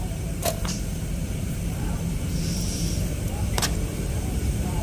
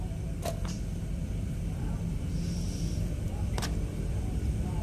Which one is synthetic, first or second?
first